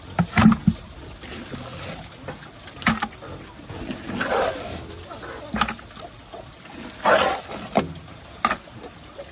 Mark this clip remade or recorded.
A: recorded